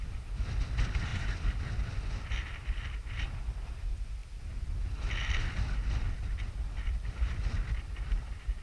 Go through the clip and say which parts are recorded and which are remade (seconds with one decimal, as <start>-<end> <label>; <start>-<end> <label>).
0.0-8.6 remade